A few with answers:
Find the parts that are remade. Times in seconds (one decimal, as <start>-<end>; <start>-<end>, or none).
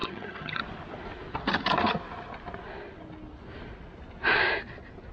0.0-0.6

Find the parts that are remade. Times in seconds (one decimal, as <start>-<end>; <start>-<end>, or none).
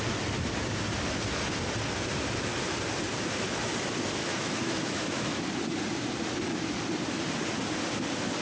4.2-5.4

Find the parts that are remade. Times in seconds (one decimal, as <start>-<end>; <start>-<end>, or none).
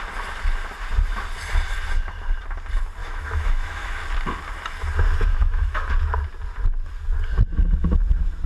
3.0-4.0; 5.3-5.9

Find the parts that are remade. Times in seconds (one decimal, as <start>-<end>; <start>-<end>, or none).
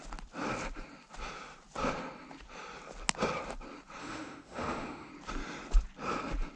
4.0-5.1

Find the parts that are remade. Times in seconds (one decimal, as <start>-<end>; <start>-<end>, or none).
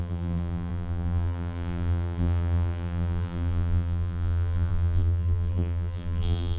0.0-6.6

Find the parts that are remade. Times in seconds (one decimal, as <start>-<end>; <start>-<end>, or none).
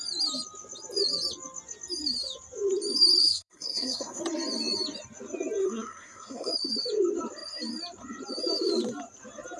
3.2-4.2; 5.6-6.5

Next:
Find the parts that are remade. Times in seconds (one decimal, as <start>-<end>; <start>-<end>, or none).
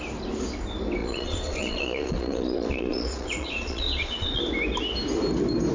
1.0-4.4